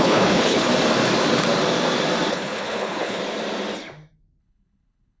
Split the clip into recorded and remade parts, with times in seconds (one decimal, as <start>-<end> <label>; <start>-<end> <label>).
0.0-0.7 remade; 0.7-2.3 recorded; 2.3-3.2 remade; 3.2-4.4 recorded; 4.4-5.2 remade